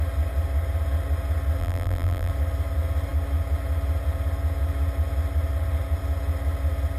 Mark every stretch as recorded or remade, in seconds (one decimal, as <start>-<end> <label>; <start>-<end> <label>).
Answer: 0.0-1.6 recorded; 1.6-2.3 remade; 2.3-7.0 recorded